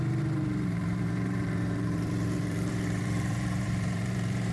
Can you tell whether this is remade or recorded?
remade